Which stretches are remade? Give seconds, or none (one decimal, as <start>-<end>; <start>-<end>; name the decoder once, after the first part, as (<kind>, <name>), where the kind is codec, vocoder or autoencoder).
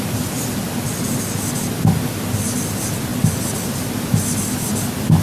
none